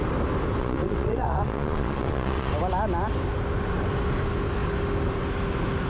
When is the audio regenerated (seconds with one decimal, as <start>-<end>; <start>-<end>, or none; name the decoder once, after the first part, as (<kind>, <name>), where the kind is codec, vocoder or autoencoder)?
0.6-2.5 (vocoder, Vocos)